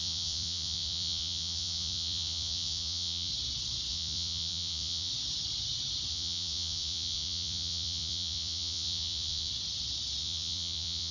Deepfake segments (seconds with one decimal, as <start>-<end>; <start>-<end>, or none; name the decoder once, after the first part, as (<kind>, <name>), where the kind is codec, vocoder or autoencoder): 0.0-3.3 (vocoder, Vocos); 3.9-5.1; 6.1-9.5; 10.2-11.1